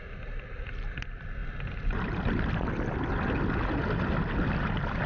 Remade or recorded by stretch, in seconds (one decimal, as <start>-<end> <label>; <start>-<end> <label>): 0.0-5.1 recorded